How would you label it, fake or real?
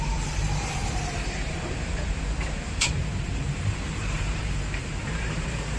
fake